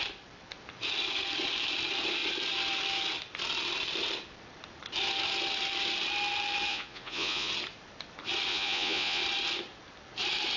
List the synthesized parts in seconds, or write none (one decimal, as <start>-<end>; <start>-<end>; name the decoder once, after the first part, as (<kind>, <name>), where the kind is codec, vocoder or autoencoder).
6.7-7.5 (vocoder, Vocos); 8.5-9.2